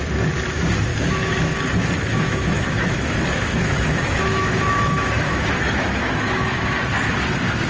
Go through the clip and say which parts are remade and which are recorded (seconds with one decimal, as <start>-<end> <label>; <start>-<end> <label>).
0.0-0.9 recorded; 0.9-1.6 remade; 1.6-2.1 recorded; 2.1-6.7 remade; 6.7-7.7 recorded